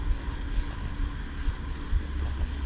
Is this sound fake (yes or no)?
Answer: no